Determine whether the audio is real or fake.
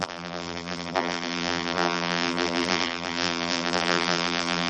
fake